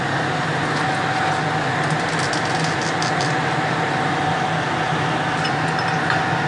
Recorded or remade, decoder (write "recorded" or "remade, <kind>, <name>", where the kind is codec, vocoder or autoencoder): recorded